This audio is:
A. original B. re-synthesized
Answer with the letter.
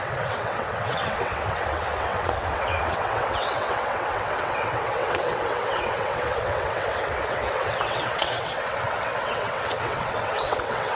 B